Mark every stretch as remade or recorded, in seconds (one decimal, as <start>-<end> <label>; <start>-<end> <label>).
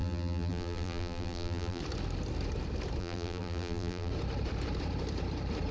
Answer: 0.0-1.8 remade; 1.8-3.0 recorded; 3.0-4.1 remade; 4.1-5.7 recorded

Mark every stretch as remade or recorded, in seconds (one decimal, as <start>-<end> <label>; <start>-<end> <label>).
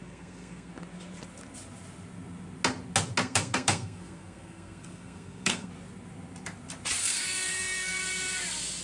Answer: 0.0-0.7 remade; 0.7-3.2 recorded; 3.2-5.7 remade; 5.7-7.0 recorded; 7.0-8.0 remade; 8.0-8.8 recorded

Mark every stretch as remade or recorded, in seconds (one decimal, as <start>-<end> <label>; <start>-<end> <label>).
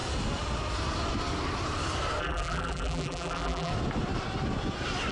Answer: 0.0-2.2 recorded; 2.2-3.7 remade; 3.7-5.1 recorded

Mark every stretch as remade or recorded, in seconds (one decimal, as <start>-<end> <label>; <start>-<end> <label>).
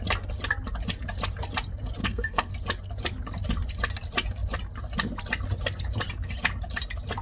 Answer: 0.0-2.0 recorded; 2.0-2.5 remade; 2.5-7.2 recorded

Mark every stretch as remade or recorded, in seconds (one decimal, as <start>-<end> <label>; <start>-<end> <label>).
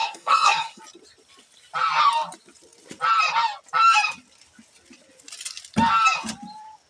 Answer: 0.0-0.8 remade; 0.8-6.9 recorded